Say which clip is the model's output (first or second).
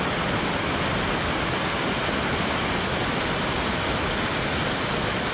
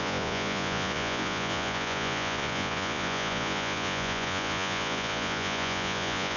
second